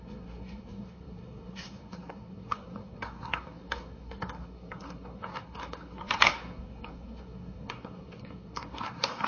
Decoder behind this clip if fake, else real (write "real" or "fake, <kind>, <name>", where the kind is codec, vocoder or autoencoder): fake, codec, SNAC